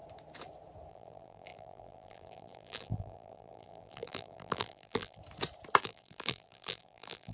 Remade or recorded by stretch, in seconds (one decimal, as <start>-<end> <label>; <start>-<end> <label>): 0.0-0.9 recorded; 0.9-5.2 remade; 5.2-5.8 recorded; 5.8-7.3 remade